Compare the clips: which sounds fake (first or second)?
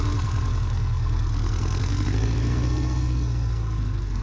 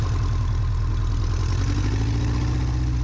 first